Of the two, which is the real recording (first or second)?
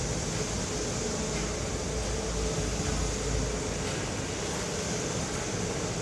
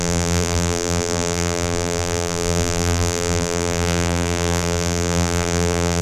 first